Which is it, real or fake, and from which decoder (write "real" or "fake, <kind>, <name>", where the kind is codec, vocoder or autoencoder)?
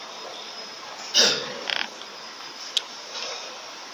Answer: real